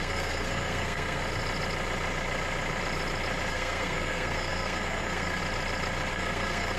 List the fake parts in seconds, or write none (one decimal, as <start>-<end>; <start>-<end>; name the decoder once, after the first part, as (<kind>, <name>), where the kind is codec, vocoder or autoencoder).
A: 0.0-1.2 (codec, SNAC); 3.5-5.4; 6.1-6.8